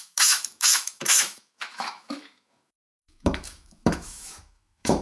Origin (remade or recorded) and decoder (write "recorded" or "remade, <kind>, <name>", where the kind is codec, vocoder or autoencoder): remade, autoencoder, DAC-VAE